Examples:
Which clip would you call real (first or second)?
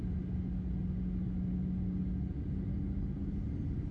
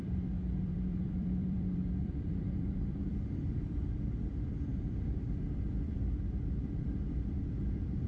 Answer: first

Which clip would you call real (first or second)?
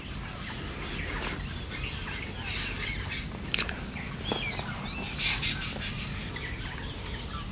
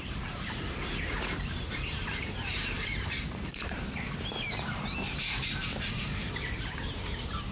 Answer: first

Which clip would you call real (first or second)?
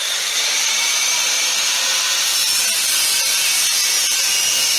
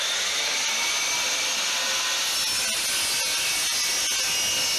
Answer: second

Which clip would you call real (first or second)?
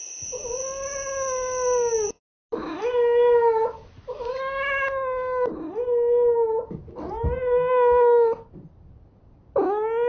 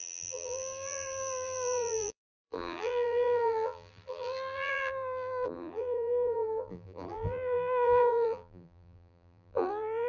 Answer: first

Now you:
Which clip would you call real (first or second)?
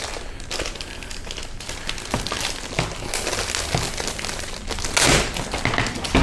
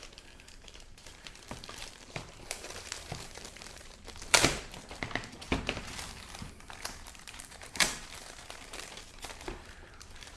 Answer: first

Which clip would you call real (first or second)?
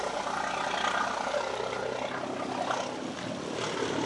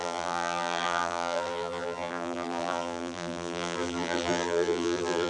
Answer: first